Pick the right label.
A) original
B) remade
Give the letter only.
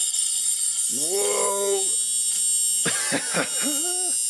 A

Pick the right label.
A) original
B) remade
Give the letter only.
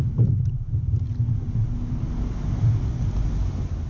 A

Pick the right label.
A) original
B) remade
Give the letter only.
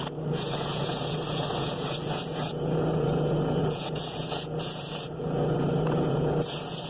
B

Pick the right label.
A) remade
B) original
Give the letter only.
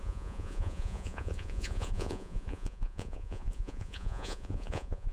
A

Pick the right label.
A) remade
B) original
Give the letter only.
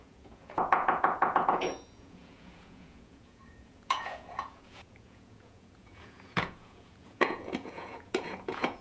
A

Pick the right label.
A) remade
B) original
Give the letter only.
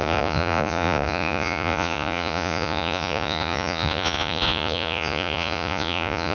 A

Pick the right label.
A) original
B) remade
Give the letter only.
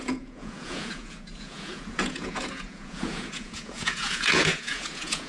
B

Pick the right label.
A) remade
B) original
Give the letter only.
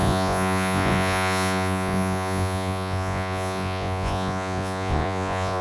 A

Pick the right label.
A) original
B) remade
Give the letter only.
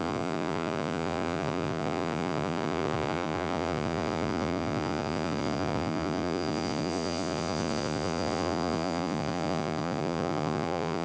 B